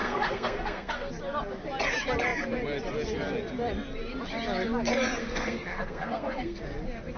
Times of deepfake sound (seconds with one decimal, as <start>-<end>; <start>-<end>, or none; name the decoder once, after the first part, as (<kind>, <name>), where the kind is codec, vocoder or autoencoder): 0.0-1.1 (codec, SNAC); 5.2-6.6

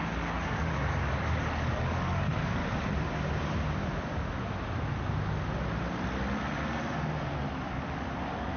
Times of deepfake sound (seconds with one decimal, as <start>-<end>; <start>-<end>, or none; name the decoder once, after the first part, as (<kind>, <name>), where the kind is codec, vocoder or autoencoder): 0.0-2.6 (codec, DAC); 7.7-8.6

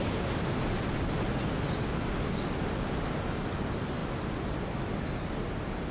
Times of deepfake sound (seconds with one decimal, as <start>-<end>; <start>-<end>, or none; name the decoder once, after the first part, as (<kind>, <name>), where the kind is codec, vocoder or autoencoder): none

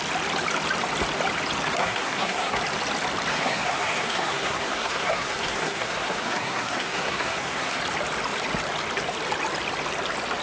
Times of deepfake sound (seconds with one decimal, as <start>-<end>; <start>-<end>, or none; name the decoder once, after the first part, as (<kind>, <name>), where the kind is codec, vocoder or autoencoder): 1.8-2.6 (codec, SNAC); 3.3-7.8

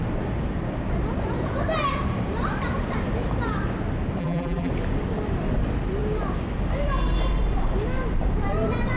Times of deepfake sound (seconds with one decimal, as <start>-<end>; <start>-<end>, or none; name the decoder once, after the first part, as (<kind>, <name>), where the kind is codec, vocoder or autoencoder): 4.2-4.7 (vocoder, BigVGAN v2)

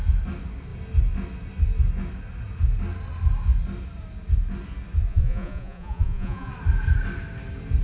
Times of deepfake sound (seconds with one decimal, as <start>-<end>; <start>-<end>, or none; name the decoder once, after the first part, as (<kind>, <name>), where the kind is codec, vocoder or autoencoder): 5.1-6.5 (vocoder, Vocos)

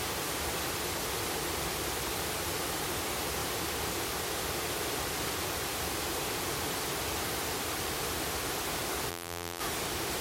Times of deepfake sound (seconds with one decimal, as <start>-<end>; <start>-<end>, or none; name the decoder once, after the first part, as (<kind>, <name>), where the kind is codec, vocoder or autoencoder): 9.1-9.6 (vocoder, BigVGAN v2)

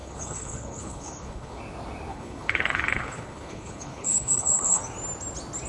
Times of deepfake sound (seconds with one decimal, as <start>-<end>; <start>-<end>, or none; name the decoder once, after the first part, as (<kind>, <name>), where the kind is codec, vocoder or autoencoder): 0.0-1.6 (codec, HILCodec); 2.1-4.8